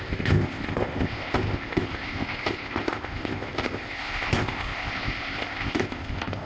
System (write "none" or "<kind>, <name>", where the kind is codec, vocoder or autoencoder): codec, ZipCodec